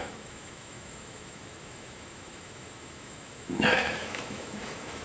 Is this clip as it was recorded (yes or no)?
no